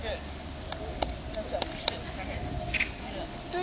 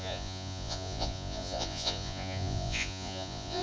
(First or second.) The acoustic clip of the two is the first